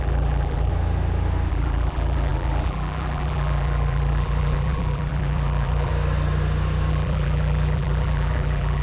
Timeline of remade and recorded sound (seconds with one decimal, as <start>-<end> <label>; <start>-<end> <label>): 0.0-0.7 remade; 0.7-1.5 recorded; 1.5-5.9 remade; 5.9-6.9 recorded; 6.9-8.8 remade